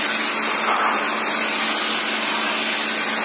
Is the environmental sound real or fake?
real